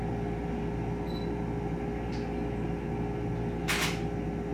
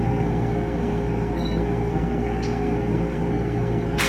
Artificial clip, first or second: second